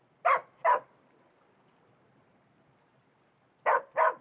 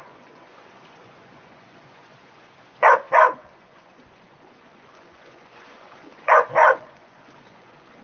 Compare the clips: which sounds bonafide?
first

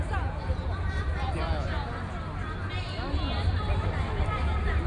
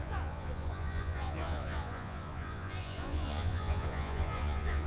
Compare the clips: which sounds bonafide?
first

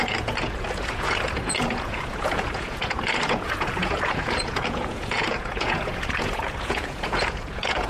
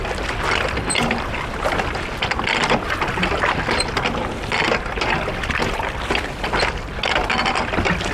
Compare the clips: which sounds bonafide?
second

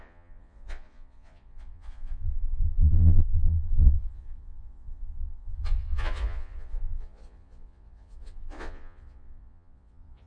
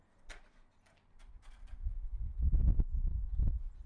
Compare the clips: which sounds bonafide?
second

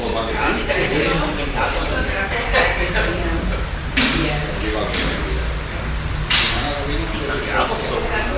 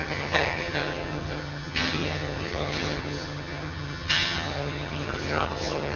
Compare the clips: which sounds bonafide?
first